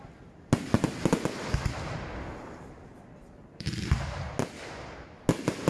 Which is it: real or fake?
real